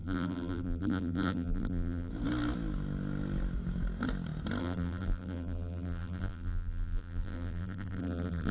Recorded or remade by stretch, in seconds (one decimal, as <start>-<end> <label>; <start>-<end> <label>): 0.0-2.1 remade; 2.1-4.6 recorded; 4.6-8.5 remade